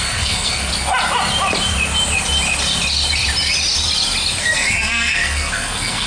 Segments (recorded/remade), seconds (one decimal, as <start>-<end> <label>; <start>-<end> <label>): 0.0-0.7 remade; 0.7-4.4 recorded; 4.4-6.1 remade